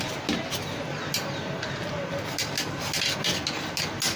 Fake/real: real